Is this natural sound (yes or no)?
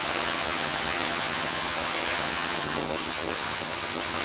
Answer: no